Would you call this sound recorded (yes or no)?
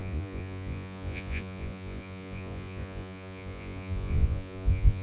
no